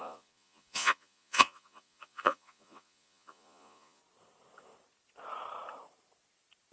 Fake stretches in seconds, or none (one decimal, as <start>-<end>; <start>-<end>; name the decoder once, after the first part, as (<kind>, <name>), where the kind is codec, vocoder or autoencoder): 0.0-4.0 (vocoder, Vocos)